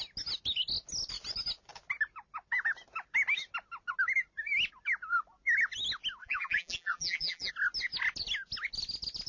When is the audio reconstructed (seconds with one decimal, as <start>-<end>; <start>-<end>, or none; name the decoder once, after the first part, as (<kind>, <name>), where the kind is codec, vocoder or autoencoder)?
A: 6.2-7.5 (vocoder, BigVGAN v2)